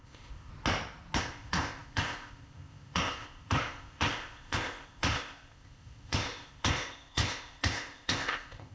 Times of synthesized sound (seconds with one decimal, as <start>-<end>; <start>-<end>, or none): 0.0-0.5; 1.2-8.7

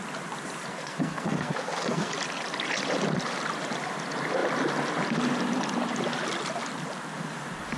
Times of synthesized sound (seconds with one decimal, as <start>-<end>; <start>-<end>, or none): 0.7-2.1

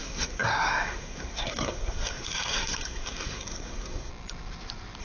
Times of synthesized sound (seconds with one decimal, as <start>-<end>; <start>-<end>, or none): 0.0-4.1

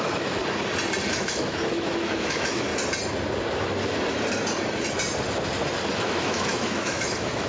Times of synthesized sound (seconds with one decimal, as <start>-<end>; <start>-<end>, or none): 0.0-0.4; 1.1-2.7; 6.0-7.5

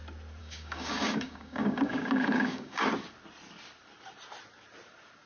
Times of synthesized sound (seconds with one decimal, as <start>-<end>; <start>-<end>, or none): 0.4-2.8

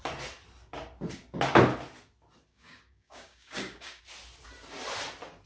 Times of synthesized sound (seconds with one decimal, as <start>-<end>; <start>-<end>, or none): 2.5-4.0

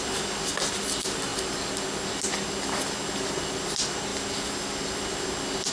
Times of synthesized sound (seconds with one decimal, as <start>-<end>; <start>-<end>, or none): none

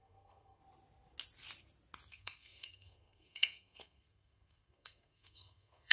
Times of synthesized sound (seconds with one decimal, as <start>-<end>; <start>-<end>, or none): 0.0-0.6; 2.1-5.9